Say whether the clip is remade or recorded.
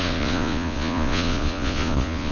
remade